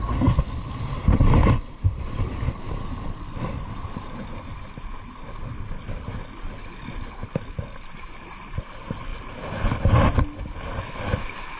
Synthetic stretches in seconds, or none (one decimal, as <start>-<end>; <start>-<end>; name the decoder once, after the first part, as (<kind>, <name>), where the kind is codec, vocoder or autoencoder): none